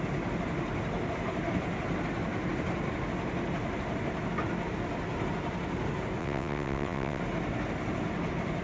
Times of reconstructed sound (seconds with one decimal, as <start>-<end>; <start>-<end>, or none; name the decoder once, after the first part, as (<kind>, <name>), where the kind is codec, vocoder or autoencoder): 6.2-7.2 (vocoder, WaveNeXt)